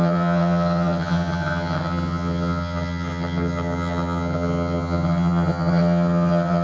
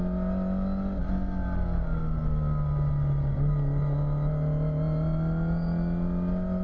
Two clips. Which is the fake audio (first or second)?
first